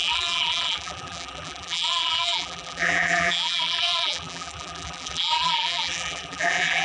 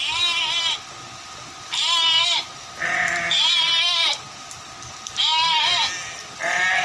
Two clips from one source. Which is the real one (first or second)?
second